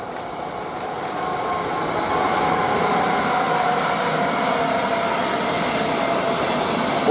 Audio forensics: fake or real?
real